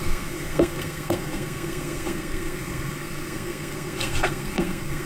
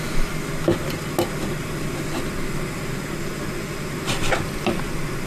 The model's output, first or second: first